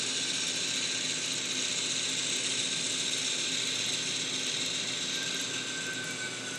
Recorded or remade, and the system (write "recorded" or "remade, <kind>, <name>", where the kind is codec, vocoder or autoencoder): recorded